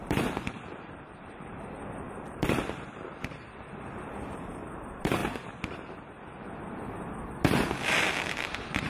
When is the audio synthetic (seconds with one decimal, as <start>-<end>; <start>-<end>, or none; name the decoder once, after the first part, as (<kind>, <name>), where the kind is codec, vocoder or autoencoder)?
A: 0.0-5.2 (vocoder, BigVGAN v2); 8.4-8.9